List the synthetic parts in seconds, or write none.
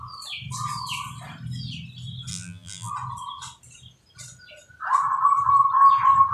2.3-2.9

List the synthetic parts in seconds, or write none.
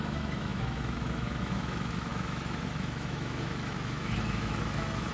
0.0-5.1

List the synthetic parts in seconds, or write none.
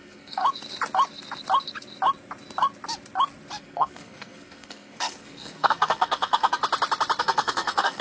0.0-0.4; 3.6-6.6; 7.2-8.0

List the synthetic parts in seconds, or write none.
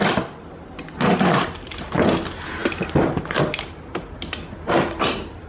none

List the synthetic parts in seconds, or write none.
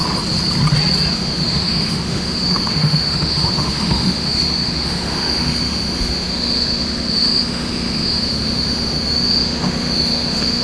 1.1-10.6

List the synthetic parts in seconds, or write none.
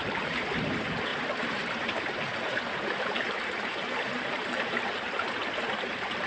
0.0-5.4